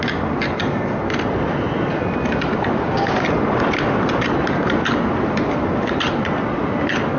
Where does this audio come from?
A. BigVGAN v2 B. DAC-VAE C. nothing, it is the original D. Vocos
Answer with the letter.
C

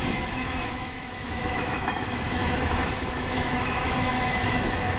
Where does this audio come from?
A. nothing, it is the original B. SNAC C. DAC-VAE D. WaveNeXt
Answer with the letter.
C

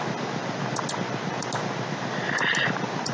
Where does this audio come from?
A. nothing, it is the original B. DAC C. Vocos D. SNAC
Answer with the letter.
A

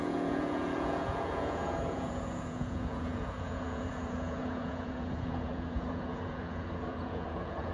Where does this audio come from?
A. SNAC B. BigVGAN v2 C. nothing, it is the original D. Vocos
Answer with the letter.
D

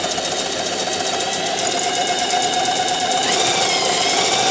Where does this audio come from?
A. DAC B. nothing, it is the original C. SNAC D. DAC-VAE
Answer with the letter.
B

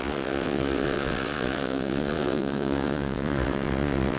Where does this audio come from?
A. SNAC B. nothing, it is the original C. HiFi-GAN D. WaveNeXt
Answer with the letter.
D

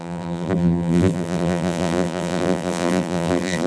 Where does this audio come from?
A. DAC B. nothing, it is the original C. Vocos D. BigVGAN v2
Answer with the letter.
D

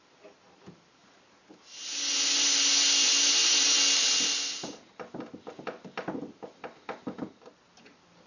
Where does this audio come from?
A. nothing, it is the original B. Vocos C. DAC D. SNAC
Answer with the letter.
A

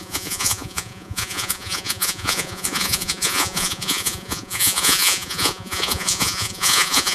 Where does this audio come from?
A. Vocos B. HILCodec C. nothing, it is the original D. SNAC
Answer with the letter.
A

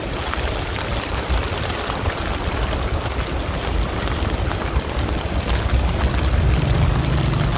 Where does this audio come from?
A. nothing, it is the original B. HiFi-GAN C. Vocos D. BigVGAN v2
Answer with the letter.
A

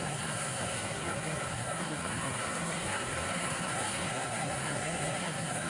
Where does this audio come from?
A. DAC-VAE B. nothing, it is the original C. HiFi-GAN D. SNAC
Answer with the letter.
D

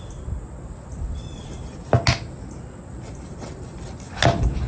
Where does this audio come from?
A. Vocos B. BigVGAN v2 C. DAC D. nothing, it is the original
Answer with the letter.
D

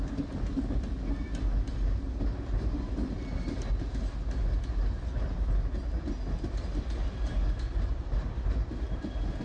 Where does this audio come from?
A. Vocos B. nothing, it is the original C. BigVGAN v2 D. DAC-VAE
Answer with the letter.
B